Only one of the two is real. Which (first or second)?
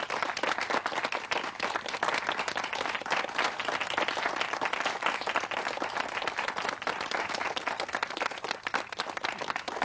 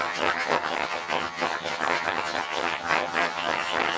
first